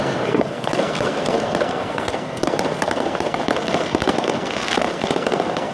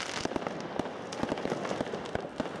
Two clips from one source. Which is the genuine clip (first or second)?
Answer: second